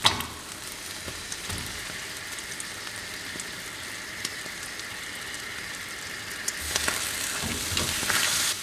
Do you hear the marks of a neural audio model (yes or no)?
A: no